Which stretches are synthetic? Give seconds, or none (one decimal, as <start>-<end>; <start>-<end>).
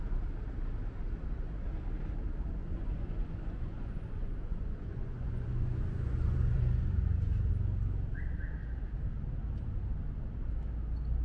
2.6-7.5